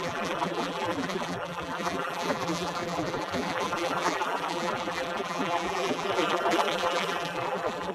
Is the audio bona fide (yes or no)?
no